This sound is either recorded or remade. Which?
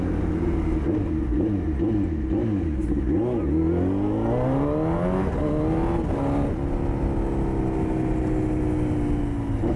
recorded